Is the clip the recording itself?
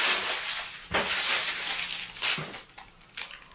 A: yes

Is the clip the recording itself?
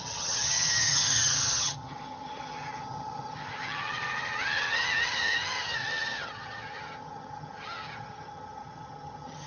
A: no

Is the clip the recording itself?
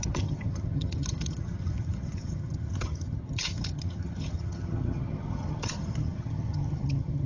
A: no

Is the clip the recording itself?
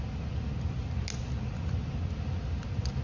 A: yes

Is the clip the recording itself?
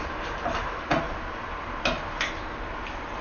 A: yes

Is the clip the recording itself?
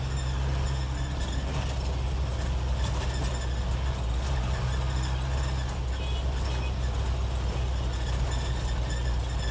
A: yes